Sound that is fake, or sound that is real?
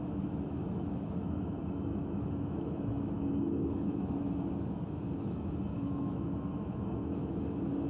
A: fake